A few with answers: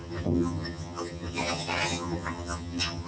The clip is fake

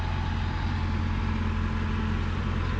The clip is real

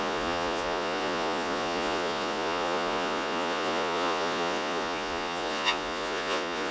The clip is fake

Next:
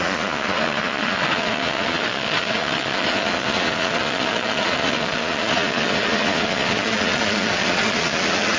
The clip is fake